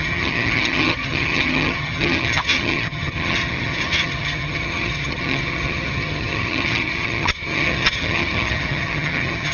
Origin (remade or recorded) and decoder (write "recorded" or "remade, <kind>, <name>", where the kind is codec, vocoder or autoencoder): remade, vocoder, HiFi-GAN